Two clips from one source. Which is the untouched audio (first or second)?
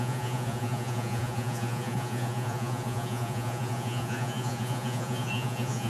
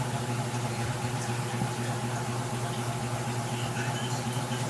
second